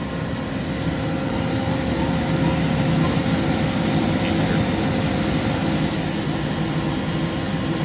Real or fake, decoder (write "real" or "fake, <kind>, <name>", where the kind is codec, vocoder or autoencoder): real